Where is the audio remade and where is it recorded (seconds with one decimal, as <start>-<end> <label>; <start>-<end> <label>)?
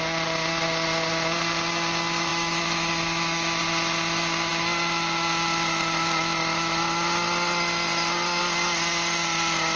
0.0-2.3 recorded; 2.3-3.6 remade; 3.6-9.8 recorded